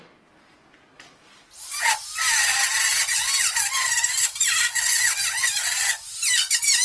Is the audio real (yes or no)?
yes